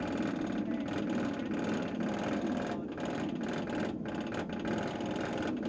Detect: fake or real real